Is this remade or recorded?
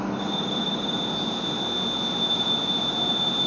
recorded